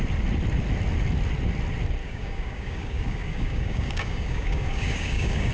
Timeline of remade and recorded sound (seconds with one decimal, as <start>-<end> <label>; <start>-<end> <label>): 0.0-2.0 recorded; 2.0-5.5 remade